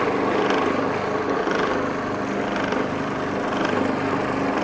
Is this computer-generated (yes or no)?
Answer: no